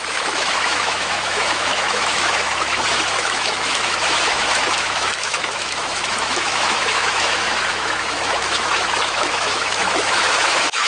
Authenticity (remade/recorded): remade